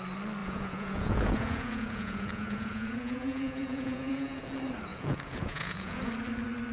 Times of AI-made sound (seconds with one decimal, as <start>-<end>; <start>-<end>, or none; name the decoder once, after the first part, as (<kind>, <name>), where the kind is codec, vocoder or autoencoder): 0.4-4.4 (vocoder, Vocos); 4.9-6.1